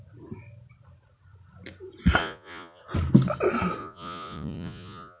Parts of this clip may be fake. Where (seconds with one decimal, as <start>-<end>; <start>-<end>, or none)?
2.2-2.8; 3.8-5.2